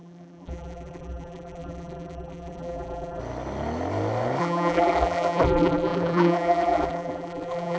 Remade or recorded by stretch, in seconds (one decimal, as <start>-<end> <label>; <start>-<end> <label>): 0.0-3.2 remade; 3.2-4.4 recorded; 4.4-7.8 remade